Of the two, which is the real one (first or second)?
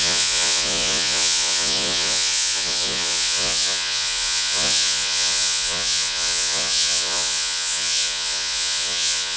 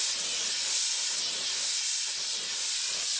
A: second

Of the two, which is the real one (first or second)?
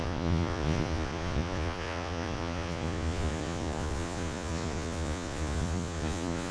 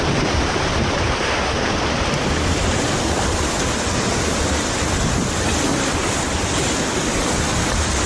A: second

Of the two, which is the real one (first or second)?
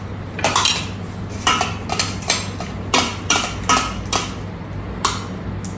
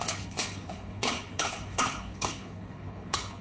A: first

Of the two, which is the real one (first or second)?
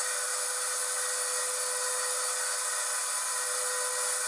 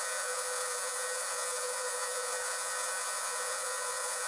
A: first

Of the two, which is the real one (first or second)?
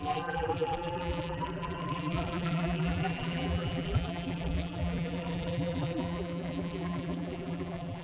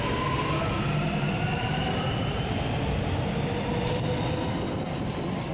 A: second